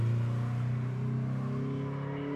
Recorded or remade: recorded